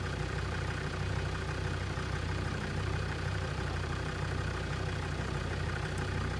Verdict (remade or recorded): remade